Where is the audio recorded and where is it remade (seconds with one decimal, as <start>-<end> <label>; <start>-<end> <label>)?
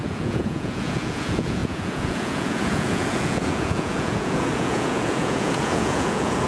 0.0-6.5 remade